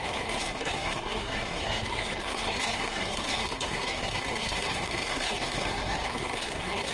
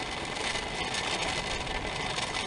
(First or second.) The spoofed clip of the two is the first